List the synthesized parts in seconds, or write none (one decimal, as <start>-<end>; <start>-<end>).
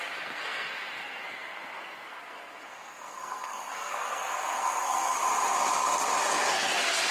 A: 0.0-5.2; 6.5-7.1